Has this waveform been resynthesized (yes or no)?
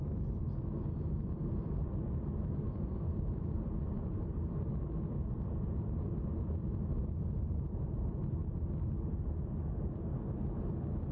yes